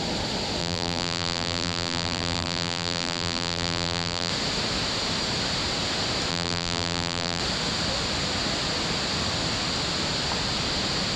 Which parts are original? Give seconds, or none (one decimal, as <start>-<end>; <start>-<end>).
0.0-0.6; 4.3-6.3; 7.4-11.2